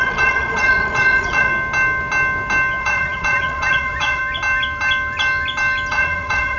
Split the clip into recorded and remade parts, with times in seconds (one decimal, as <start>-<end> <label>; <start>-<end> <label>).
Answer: 0.0-1.5 remade; 1.5-2.8 recorded; 2.8-4.2 remade; 4.2-5.9 recorded; 5.9-6.6 remade